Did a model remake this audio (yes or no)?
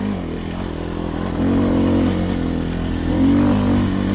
no